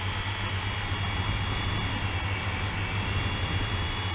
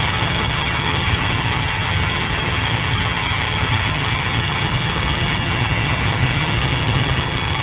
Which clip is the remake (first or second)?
second